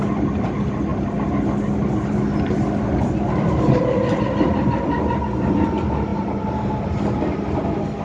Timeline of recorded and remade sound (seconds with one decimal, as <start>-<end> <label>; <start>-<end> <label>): 0.0-6.1 recorded; 6.1-7.0 remade; 7.0-8.0 recorded